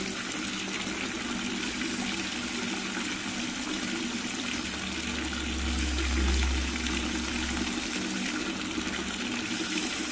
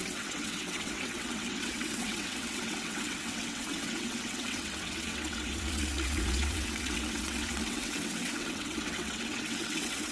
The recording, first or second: first